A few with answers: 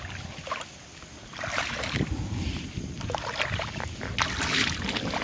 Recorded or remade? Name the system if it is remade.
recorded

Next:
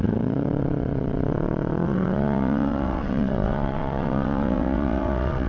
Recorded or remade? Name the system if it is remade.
remade, vocoder, WaveNeXt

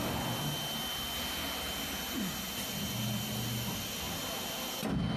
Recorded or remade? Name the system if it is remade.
recorded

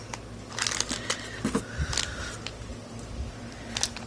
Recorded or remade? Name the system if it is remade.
recorded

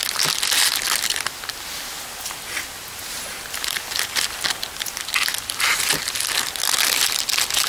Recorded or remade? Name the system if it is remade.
recorded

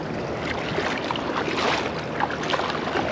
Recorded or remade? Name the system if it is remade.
recorded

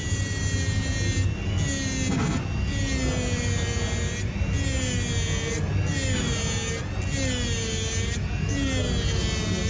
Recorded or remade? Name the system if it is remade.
recorded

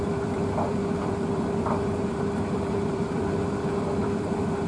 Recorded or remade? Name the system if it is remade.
remade, vocoder, BigVGAN v2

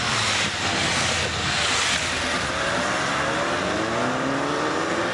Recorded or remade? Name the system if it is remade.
recorded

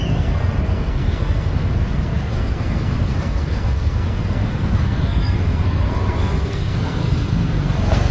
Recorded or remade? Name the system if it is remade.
remade, codec, SNAC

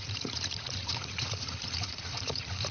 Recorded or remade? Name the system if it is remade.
remade, vocoder, Vocos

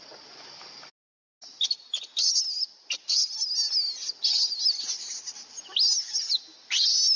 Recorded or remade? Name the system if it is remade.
recorded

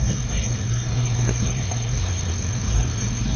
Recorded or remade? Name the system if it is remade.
remade, codec, SNAC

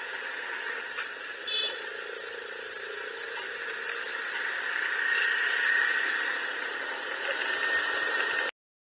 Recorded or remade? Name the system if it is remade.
recorded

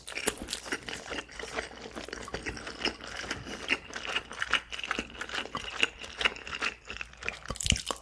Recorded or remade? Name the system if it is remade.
recorded